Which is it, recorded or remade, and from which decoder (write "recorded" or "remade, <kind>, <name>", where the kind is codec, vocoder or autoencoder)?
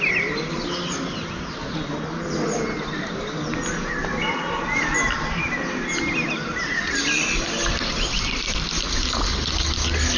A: recorded